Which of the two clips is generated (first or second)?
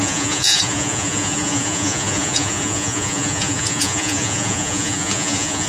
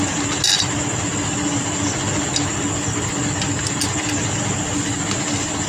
first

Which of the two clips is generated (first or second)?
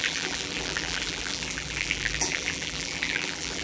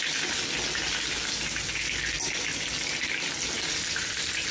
first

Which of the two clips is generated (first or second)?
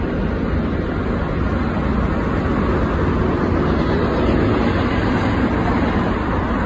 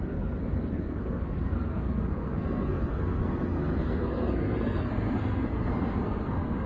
second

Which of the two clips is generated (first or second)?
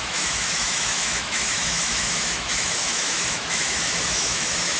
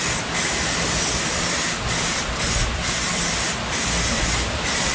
first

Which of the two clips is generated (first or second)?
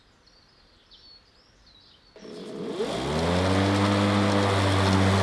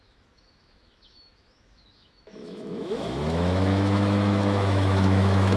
second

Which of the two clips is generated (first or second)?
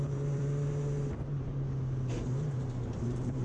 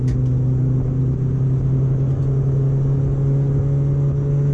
first